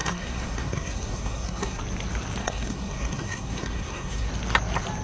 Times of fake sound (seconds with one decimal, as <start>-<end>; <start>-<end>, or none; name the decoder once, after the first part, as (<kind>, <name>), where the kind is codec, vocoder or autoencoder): 0.0-1.8 (codec, SNAC); 2.4-4.3